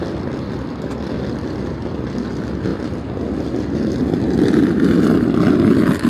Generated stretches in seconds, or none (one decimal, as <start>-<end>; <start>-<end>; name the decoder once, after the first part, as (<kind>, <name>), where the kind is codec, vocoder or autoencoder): none